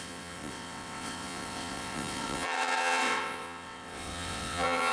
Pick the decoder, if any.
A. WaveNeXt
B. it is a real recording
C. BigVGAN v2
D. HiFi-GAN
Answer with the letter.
A